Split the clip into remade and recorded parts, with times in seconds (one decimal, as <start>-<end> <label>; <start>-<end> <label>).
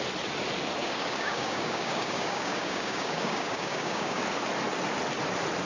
0.0-0.8 recorded; 0.8-4.2 remade; 4.2-5.7 recorded